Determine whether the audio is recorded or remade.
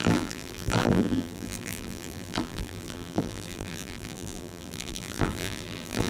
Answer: remade